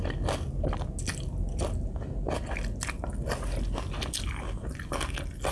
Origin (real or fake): real